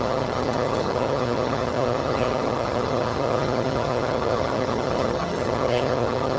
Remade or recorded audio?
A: remade